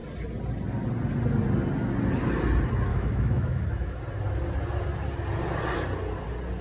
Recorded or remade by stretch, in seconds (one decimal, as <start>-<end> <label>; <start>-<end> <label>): 0.0-2.9 recorded; 2.9-4.0 remade; 4.0-6.6 recorded